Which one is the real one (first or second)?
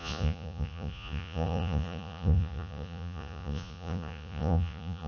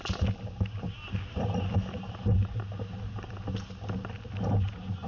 second